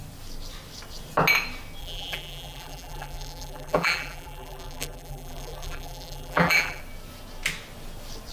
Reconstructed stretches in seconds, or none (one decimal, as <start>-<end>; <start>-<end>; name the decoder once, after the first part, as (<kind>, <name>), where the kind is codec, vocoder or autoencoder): 1.8-6.8 (vocoder, BigVGAN v2)